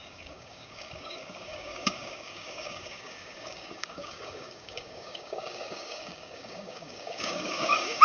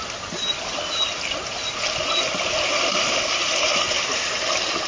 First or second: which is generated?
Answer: first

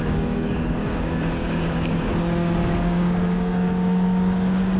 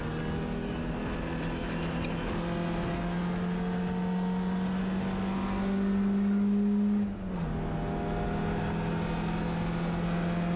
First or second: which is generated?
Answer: first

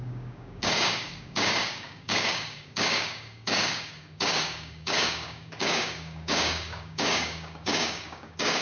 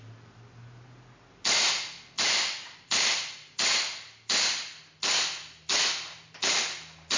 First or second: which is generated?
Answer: first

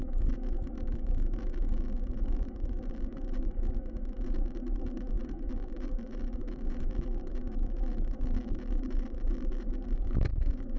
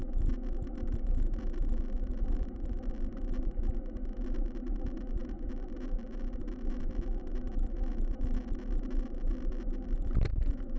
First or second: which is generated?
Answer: first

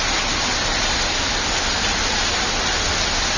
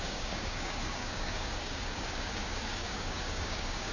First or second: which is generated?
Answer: second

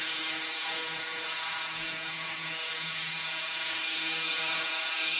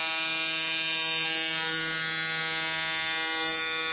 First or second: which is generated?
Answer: first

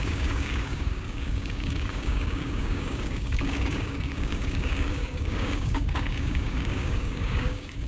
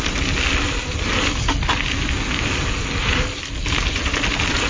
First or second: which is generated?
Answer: first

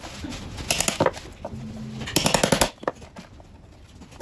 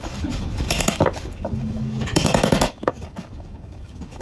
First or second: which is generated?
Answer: second